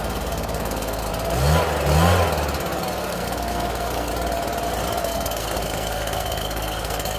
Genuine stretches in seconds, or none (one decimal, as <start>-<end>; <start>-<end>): 1.1-3.0; 4.1-5.0